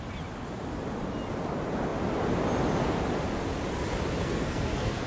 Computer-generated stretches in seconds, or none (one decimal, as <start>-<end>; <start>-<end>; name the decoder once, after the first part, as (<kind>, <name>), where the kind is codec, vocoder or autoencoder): 4.2-5.1 (codec, SNAC)